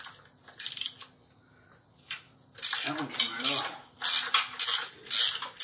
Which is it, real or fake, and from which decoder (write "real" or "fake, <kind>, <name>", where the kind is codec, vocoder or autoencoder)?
real